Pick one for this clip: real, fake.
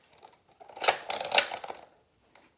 real